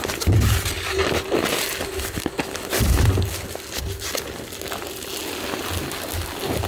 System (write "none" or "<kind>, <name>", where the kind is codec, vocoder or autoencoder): none